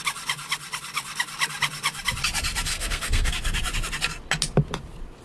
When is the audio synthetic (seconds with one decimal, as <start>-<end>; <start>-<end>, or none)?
2.7-3.3